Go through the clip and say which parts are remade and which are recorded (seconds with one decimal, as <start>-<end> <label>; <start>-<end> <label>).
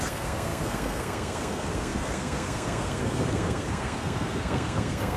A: 0.0-5.2 remade